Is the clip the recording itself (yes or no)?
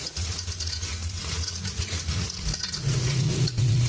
no